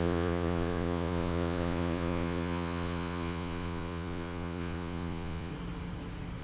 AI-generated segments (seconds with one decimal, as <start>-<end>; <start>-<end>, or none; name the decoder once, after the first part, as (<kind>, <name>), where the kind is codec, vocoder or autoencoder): 0.0-5.5 (vocoder, Vocos)